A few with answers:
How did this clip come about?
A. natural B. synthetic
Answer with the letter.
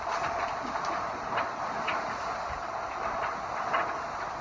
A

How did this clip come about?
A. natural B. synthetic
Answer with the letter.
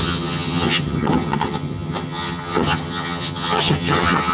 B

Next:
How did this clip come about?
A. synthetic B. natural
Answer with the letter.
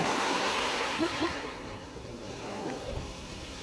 A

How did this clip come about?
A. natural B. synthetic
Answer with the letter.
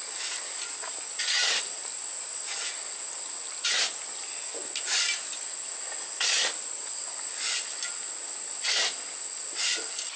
A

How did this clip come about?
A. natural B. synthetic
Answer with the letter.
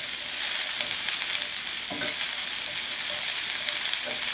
A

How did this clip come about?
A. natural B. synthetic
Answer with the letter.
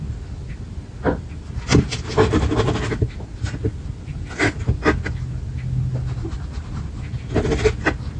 A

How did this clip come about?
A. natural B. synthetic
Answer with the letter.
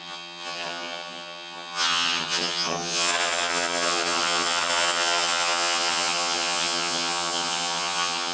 B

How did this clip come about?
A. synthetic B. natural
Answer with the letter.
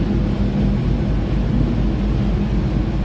B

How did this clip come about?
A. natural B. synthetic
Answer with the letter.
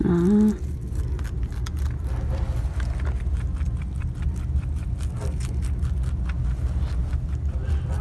A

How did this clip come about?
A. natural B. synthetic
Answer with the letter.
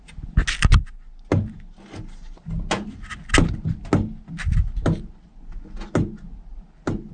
A